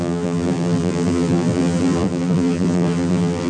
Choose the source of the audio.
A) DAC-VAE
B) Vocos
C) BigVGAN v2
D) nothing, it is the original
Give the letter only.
C